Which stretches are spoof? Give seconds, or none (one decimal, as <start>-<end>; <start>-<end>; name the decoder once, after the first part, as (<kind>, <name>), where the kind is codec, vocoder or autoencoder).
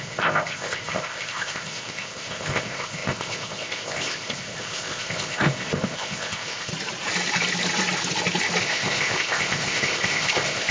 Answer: 0.0-6.7 (codec, ZipCodec); 8.6-10.7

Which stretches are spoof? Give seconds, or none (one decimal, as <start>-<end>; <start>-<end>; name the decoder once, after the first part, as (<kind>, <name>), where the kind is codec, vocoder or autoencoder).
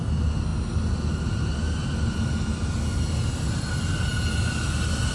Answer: none